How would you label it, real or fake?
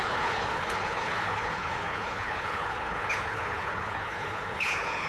fake